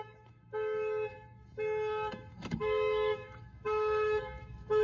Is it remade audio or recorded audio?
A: remade